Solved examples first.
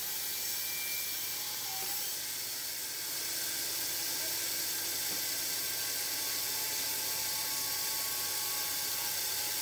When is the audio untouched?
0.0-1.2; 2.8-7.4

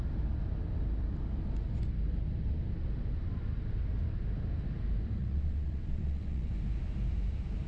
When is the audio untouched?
0.0-5.2; 6.5-7.7

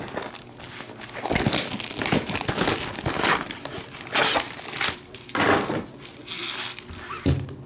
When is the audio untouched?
0.0-7.7

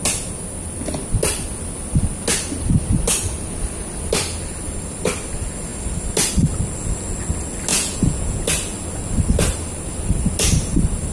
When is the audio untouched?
0.0-7.7; 8.4-11.1

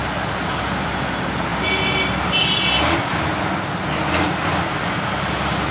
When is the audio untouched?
0.0-5.7

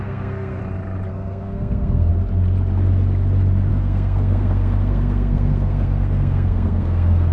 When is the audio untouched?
0.6-1.1; 2.1-3.7